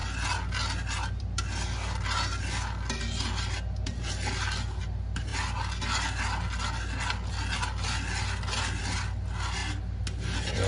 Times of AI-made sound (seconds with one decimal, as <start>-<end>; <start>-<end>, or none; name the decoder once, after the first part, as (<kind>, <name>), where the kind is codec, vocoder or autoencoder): none